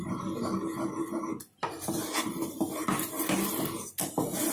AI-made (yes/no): no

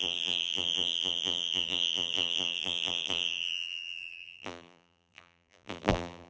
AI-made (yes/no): yes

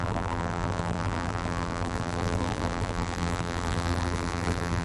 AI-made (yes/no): yes